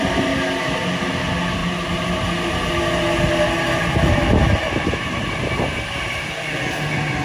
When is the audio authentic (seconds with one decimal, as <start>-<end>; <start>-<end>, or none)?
0.0-1.6; 2.7-4.6; 5.3-7.2